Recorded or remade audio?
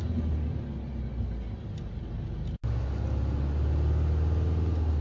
recorded